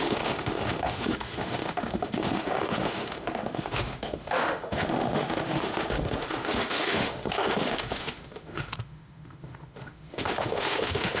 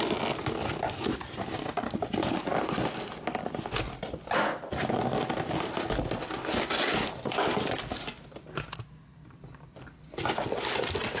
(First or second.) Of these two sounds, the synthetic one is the first